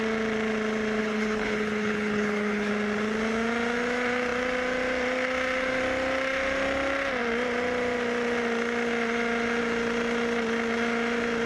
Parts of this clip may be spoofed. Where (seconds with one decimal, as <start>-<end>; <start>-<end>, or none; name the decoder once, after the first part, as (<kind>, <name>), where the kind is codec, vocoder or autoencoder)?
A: 1.0-2.7 (codec, HILCodec)